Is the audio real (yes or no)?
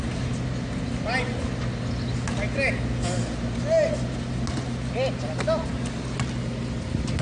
yes